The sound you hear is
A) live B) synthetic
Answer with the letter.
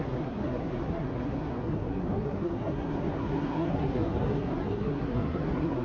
B